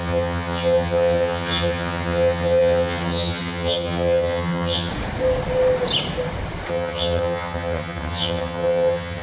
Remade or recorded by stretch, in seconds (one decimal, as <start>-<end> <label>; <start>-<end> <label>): 0.0-4.9 remade; 4.9-6.7 recorded; 6.7-9.2 remade